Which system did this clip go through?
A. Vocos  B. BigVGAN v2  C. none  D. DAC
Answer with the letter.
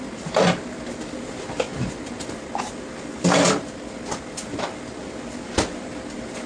C